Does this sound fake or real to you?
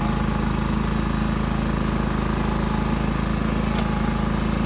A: real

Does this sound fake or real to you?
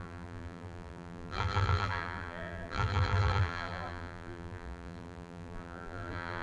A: fake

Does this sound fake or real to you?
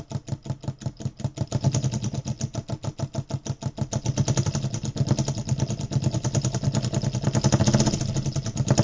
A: real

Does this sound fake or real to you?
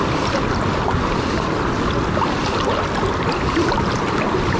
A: real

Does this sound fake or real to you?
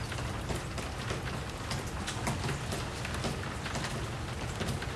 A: real